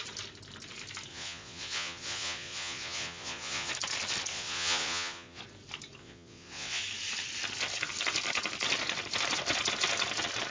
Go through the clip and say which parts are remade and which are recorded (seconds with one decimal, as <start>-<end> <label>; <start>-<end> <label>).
0.0-1.1 recorded; 1.1-3.7 remade; 3.7-4.3 recorded; 4.3-5.4 remade; 5.4-6.0 recorded; 6.0-6.8 remade; 6.8-10.5 recorded